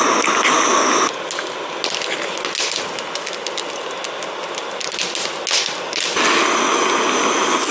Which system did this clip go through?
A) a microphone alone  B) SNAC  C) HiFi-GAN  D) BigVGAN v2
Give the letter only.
A